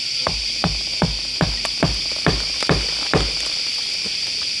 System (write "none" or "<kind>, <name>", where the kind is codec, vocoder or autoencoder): none